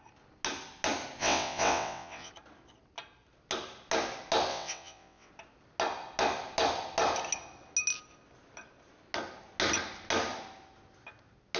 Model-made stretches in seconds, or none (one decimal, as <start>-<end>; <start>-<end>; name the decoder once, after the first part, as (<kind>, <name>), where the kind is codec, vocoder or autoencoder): 1.2-2.3 (vocoder, WaveNeXt); 4.5-5.3